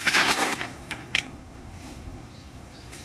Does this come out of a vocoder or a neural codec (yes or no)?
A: yes